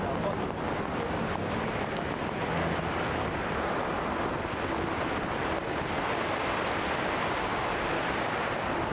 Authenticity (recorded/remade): recorded